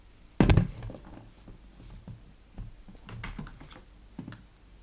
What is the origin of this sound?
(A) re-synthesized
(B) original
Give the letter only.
B